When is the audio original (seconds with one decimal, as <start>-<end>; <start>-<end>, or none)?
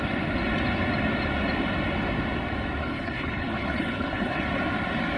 0.0-2.8; 4.4-5.2